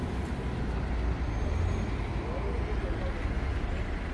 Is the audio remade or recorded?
recorded